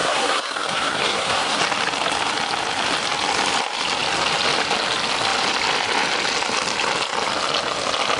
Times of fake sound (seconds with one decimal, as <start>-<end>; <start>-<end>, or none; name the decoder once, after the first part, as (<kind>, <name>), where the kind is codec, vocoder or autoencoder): 0.0-1.6 (codec, SNAC)